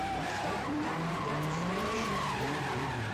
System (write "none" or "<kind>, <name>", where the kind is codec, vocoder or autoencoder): vocoder, BigVGAN v2